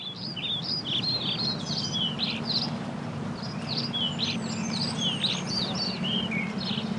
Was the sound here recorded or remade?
recorded